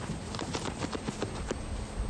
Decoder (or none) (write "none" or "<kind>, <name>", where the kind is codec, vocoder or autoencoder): none